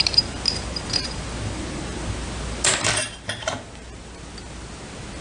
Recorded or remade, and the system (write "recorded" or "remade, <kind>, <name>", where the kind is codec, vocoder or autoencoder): recorded